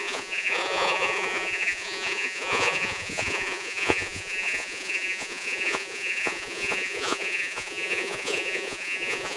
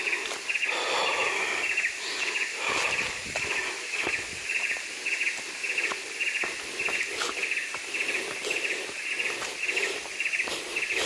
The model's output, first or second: first